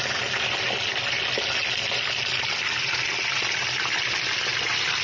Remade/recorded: recorded